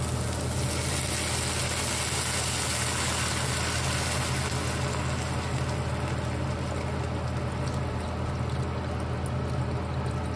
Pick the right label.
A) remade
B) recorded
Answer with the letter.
B